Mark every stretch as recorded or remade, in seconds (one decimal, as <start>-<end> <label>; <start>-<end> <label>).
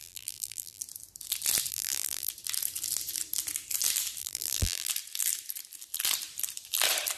0.0-0.8 remade; 0.8-1.7 recorded; 1.7-2.3 remade; 2.3-4.2 recorded; 4.2-4.9 remade; 4.9-7.2 recorded